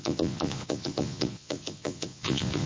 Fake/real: fake